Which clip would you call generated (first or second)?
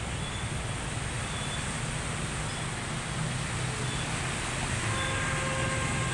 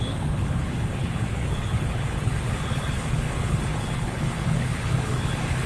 second